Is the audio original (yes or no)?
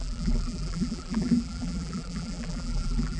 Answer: no